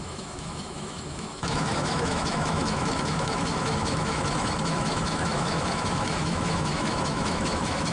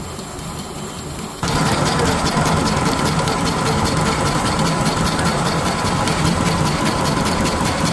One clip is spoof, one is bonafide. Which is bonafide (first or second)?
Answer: second